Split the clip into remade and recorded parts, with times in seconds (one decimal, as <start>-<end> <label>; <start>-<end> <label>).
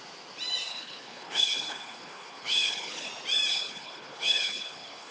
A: 0.0-0.7 recorded; 0.7-3.1 remade; 3.1-3.5 recorded; 3.5-5.1 remade